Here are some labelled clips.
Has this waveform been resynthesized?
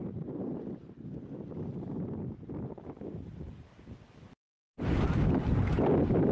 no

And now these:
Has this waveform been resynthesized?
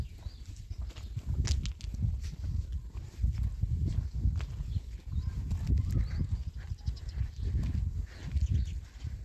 no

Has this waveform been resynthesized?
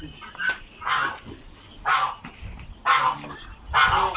no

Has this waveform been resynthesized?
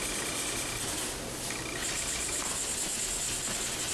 no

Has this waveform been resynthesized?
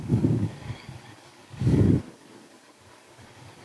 yes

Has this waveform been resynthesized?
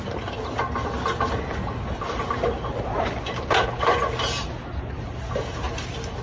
no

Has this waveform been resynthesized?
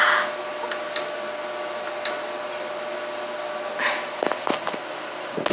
no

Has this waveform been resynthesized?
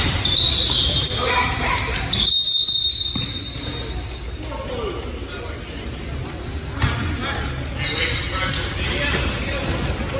no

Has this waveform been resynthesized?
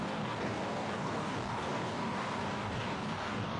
yes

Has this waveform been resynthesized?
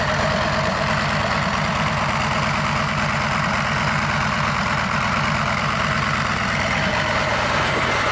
no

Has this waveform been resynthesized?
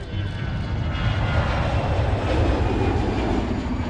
no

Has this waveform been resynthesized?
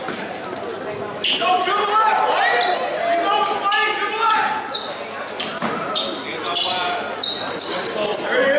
no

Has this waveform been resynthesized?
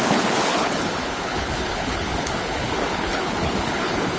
yes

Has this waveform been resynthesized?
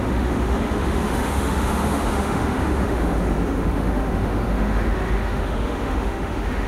yes